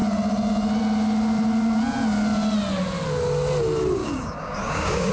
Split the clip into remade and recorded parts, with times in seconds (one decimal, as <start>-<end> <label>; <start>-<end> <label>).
0.0-4.0 recorded; 4.0-5.1 remade